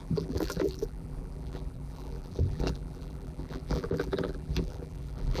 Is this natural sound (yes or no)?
no